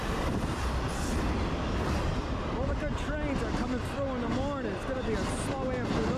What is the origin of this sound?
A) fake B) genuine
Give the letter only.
B